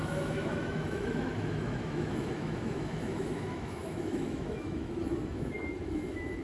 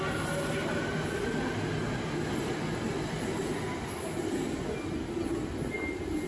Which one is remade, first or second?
first